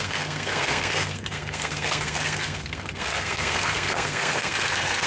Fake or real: fake